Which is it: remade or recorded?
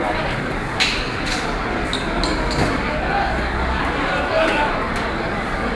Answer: remade